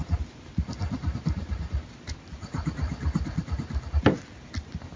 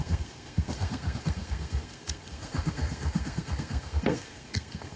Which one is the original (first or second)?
first